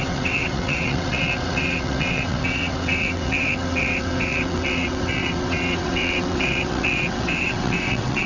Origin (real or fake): fake